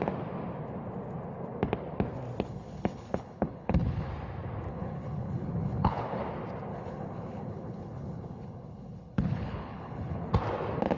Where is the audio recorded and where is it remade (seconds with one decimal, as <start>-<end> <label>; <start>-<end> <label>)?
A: 0.0-2.5 recorded; 2.5-4.1 remade; 4.1-4.7 recorded; 4.7-6.2 remade; 6.2-6.7 recorded; 6.7-10.3 remade; 10.3-11.0 recorded